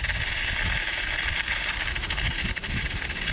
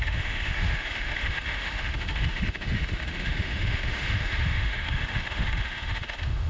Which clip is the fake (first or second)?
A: second